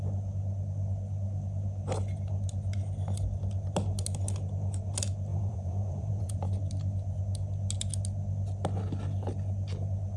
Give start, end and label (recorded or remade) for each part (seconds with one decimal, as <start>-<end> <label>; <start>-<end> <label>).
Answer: 0.0-5.3 recorded; 5.3-6.5 remade; 6.5-10.2 recorded